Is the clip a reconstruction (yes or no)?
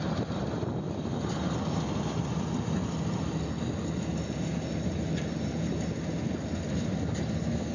no